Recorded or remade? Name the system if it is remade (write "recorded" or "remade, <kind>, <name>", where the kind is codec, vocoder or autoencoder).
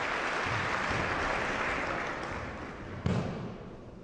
recorded